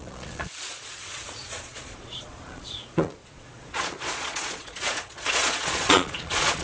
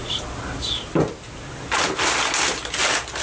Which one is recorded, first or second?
second